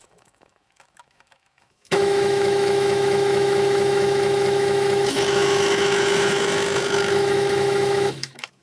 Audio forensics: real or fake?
fake